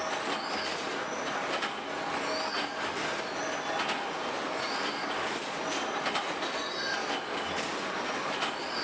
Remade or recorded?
recorded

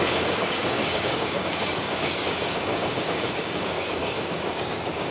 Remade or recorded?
remade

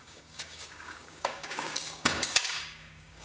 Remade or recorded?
remade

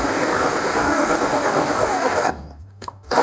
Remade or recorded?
remade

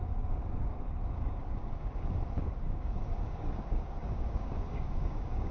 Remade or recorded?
remade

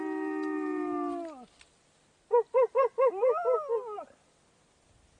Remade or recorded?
recorded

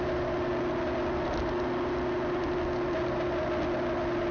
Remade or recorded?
recorded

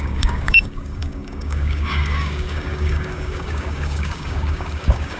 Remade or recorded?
remade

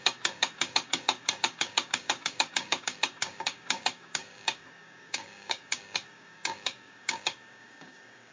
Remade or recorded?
remade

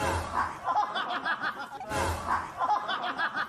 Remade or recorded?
recorded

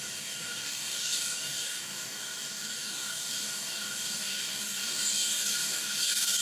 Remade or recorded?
remade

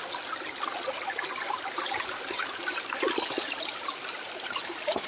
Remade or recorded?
recorded